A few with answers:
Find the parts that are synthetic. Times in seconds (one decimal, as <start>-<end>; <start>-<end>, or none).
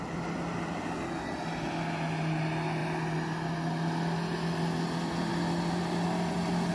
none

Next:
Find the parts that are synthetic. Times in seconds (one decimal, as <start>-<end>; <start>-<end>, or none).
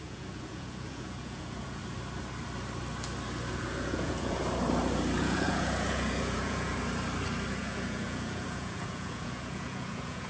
0.0-1.8; 3.5-4.4; 5.2-6.7; 7.5-10.3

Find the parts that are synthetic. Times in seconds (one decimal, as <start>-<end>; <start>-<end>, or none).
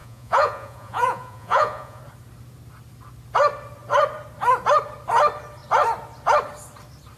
0.0-2.0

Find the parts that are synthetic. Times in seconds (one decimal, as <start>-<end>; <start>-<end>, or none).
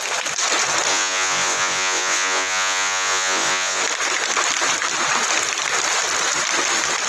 0.9-3.8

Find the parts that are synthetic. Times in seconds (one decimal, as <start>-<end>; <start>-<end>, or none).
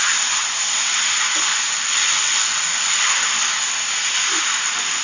1.5-3.2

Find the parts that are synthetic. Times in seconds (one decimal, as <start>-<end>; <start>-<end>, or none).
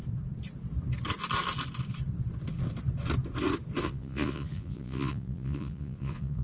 3.8-6.4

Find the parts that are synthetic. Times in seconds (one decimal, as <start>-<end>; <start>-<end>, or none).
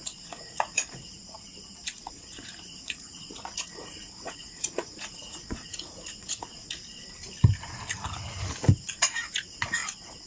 0.0-1.2; 2.1-6.8; 9.0-9.8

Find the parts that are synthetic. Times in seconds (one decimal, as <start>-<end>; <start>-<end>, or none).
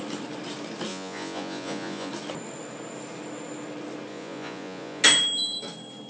0.9-2.1; 4.1-5.0